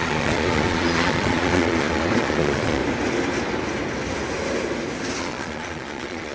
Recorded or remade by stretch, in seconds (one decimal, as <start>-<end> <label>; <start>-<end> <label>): 0.0-2.8 remade; 2.8-5.2 recorded; 5.2-6.3 remade